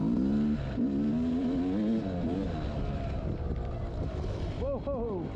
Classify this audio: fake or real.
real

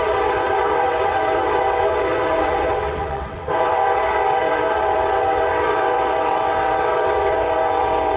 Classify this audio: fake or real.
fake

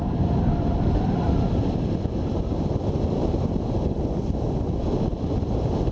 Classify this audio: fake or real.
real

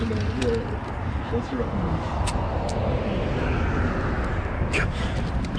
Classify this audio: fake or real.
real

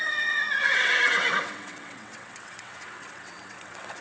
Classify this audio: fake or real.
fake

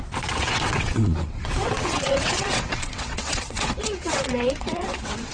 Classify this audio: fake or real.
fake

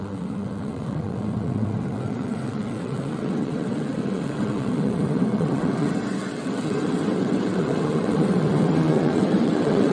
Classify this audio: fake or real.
fake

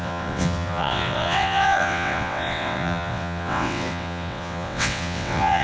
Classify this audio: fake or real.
fake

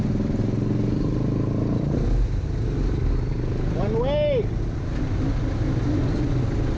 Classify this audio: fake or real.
real